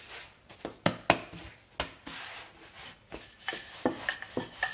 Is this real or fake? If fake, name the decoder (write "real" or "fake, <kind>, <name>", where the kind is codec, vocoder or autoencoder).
real